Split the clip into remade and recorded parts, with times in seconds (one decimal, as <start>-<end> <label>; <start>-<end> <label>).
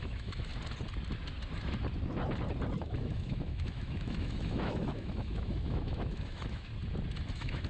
0.0-0.5 remade; 0.5-2.8 recorded; 2.8-6.7 remade; 6.7-7.3 recorded; 7.3-7.7 remade